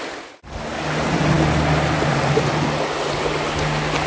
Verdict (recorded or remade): recorded